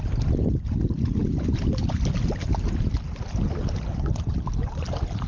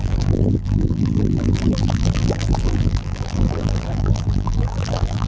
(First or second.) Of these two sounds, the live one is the first